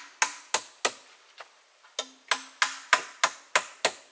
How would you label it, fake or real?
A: real